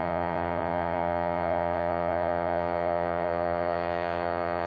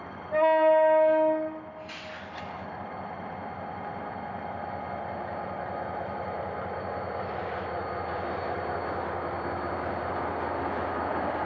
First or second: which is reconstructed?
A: first